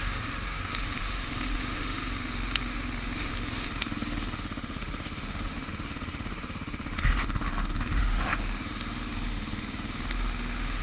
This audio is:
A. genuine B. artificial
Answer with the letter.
B